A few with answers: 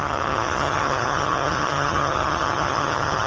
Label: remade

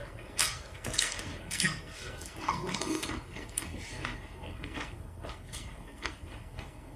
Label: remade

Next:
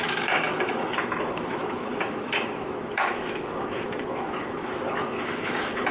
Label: remade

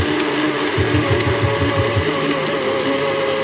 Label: recorded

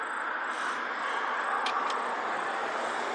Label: recorded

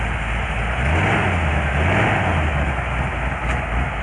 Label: recorded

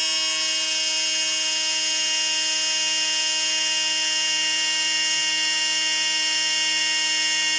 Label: recorded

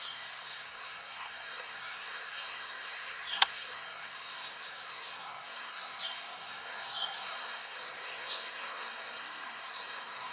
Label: remade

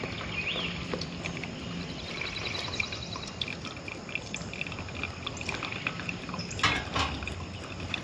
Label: recorded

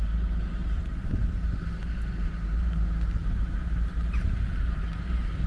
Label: remade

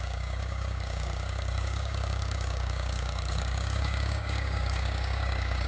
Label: remade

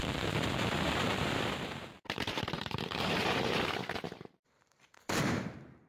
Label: remade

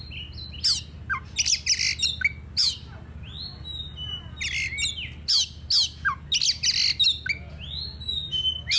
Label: recorded